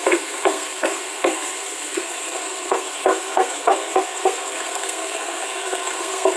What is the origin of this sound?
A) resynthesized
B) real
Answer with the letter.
A